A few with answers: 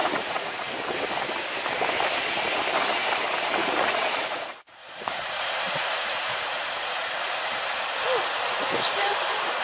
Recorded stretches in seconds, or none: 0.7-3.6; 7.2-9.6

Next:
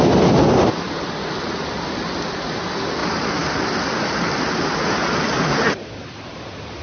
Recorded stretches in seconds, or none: 0.0-6.8

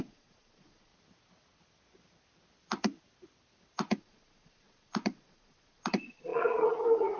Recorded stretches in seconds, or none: 0.9-4.0

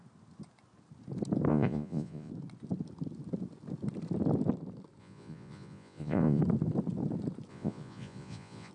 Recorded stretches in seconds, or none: 0.0-1.5; 2.3-5.0; 6.4-7.5

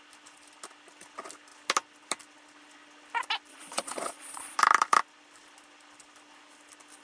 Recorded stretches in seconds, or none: 0.0-3.5; 4.6-7.0

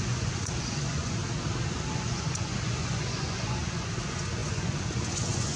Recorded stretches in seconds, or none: 1.2-1.9

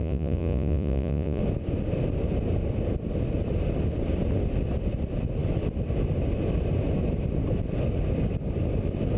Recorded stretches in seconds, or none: 1.4-9.2